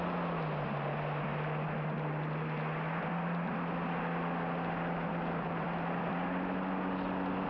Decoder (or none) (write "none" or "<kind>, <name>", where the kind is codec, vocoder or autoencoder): none